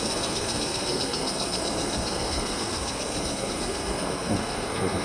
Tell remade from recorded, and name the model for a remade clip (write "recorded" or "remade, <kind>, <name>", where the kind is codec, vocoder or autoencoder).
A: remade, codec, SNAC